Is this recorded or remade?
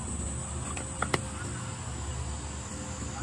recorded